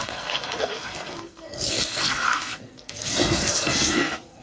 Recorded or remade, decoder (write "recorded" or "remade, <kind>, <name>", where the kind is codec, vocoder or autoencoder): remade, codec, SNAC